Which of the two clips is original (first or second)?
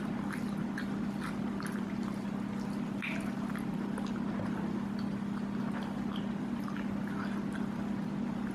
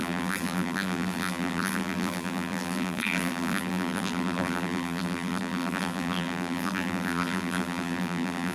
first